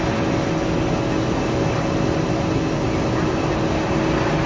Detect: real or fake real